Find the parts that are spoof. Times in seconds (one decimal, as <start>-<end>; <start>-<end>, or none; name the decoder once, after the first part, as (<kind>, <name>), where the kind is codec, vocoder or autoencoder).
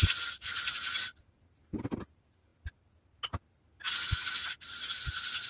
none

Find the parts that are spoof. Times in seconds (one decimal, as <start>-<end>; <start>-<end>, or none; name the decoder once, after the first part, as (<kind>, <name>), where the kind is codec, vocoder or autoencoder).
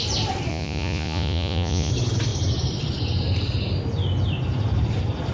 0.5-1.9 (vocoder, Vocos)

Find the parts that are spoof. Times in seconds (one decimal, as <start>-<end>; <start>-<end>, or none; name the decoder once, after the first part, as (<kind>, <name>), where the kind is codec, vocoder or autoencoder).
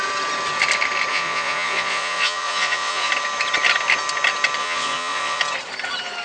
1.1-3.1 (vocoder, Vocos); 4.6-5.4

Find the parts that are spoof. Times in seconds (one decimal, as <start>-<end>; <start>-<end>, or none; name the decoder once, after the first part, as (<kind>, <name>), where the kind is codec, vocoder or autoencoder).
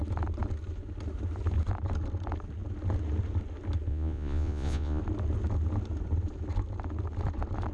3.9-5.0 (vocoder, Vocos)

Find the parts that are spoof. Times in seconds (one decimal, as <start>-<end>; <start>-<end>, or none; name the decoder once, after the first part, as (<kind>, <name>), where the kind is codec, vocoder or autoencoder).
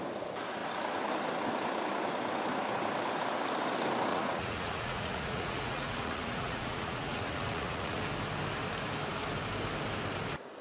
4.1-8.0 (vocoder, Vocos)